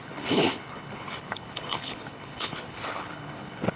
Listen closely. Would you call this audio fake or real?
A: fake